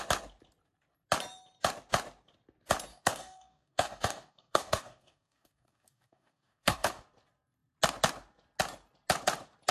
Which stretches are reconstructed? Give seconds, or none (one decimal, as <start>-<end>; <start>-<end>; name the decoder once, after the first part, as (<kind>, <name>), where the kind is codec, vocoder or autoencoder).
2.9-7.0 (codec, DAC)